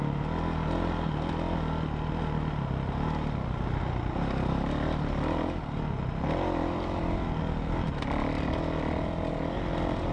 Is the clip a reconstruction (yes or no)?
no